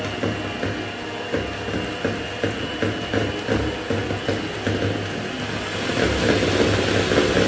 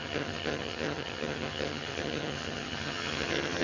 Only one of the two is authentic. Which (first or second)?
first